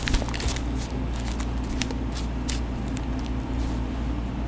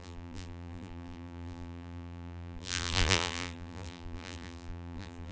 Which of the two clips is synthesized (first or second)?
second